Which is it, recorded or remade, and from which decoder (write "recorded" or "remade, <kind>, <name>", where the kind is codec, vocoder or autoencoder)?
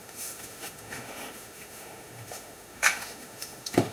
remade, autoencoder, DAC-VAE